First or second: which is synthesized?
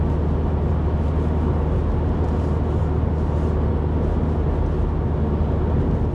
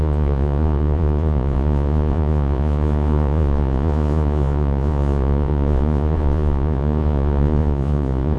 second